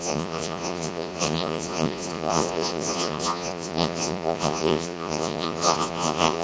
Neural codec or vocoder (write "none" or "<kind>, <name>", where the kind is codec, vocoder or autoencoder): vocoder, Vocos